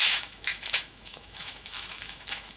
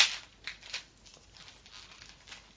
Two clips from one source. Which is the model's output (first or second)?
first